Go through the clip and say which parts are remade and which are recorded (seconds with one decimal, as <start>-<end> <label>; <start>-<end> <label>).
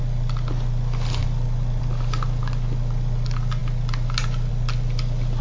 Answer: 0.0-5.4 recorded